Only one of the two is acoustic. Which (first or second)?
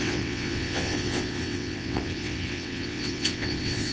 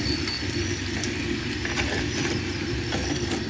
second